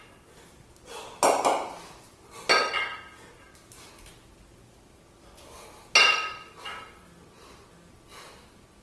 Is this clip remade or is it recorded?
recorded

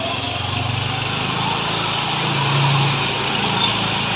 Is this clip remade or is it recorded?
recorded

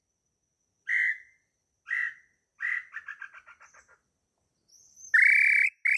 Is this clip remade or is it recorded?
recorded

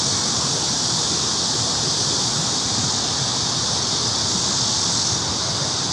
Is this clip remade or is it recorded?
recorded